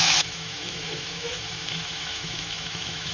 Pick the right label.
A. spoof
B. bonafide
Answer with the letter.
A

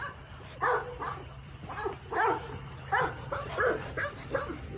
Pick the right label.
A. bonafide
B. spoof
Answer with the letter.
B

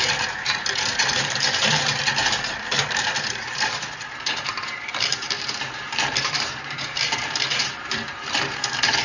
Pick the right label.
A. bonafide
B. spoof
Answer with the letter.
B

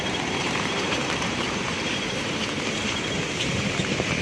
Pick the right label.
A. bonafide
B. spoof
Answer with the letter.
B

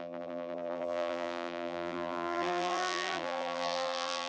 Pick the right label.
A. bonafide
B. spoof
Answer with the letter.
B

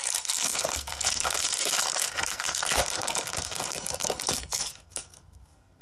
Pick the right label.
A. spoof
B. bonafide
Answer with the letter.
A